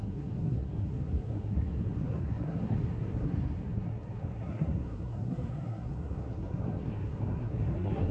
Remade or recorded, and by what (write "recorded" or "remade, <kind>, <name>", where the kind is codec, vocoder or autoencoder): remade, codec, SNAC